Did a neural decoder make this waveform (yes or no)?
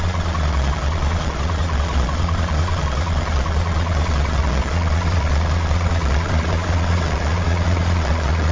yes